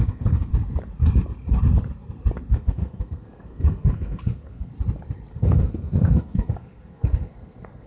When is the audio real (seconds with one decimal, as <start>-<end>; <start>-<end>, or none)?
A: 0.5-2.5; 4.7-5.3